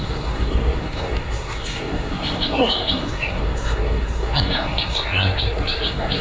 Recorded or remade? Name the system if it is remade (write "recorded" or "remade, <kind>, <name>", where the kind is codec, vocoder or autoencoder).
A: remade, codec, SNAC